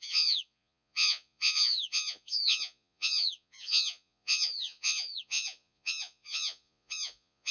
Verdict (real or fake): fake